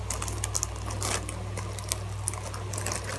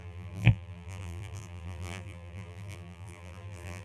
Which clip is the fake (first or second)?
second